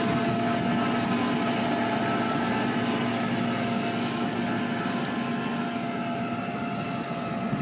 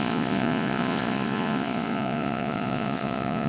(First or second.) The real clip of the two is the first